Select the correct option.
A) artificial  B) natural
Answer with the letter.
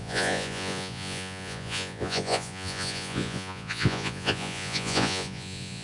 A